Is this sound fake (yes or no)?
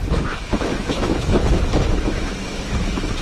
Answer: yes